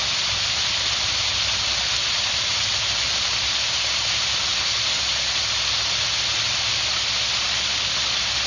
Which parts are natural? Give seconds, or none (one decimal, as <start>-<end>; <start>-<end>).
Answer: 0.0-8.5

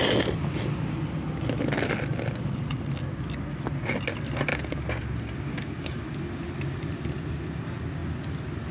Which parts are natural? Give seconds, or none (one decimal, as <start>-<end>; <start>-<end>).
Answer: 0.0-4.5; 5.0-5.5; 6.0-8.7

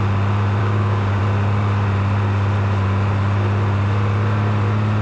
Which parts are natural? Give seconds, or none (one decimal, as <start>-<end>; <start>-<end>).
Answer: 0.0-0.6; 1.2-5.0

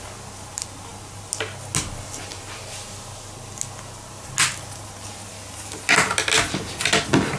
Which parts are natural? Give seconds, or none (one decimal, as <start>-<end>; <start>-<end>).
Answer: 0.0-7.4

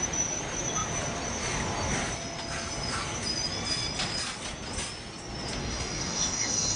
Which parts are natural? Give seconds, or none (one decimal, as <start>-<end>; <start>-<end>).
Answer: 0.0-5.6

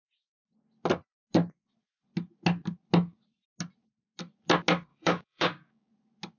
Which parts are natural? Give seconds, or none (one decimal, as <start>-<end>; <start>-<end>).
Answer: 0.0-4.9; 5.9-6.4

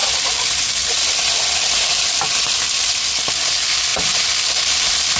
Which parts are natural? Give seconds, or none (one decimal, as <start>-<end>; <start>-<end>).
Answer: 0.0-5.2

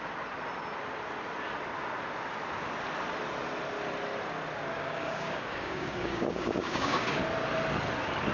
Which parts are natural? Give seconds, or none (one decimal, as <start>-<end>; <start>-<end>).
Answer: 0.0-4.7; 7.2-8.3